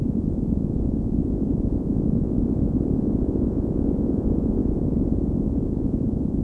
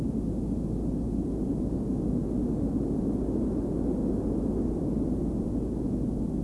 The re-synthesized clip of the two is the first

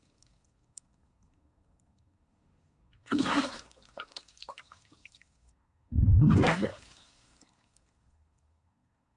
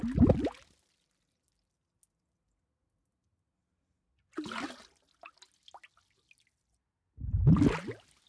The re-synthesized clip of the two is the first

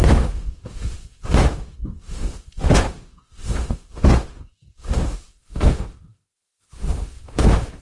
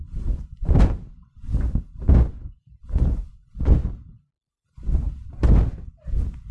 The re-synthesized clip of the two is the first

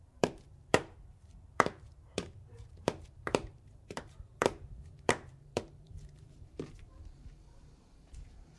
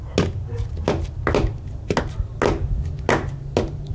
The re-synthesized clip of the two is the first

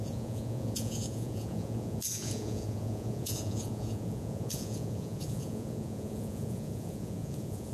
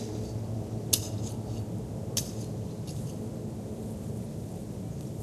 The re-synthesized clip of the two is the first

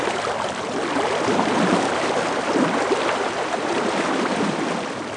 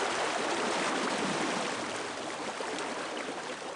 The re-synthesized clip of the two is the first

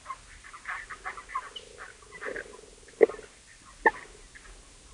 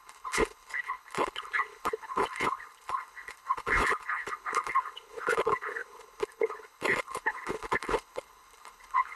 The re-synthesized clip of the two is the second